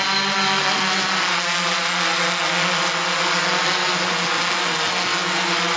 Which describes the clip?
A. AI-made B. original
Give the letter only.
B